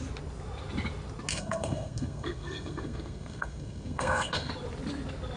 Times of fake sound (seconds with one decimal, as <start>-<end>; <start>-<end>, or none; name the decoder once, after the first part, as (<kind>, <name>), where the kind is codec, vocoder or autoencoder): 1.3-4.5 (codec, SNAC)